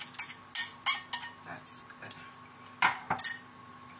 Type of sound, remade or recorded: recorded